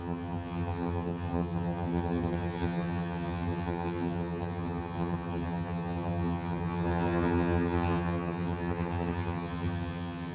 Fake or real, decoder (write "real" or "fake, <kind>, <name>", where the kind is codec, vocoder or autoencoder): fake, vocoder, HiFi-GAN